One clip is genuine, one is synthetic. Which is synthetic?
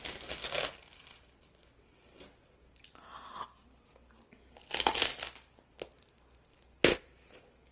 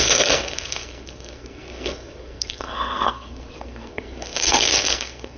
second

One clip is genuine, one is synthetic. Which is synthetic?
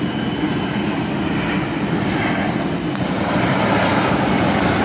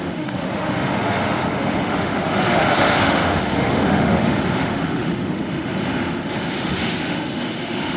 second